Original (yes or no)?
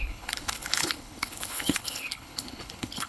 no